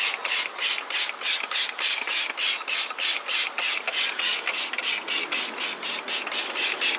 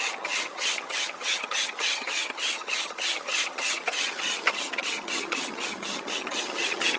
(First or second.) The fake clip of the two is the second